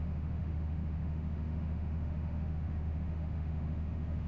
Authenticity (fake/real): fake